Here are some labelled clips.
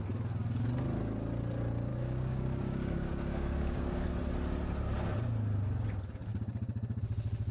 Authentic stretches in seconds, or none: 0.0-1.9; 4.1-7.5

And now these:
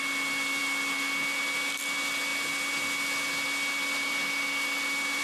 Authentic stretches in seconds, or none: 0.0-5.2